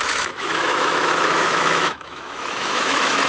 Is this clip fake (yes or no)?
yes